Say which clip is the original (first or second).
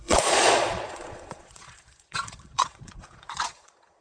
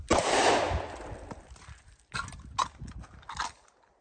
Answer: second